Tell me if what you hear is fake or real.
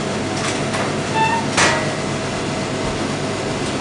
real